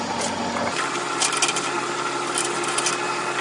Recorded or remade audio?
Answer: recorded